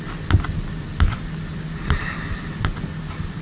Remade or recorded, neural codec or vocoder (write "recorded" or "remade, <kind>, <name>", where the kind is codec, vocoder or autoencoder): recorded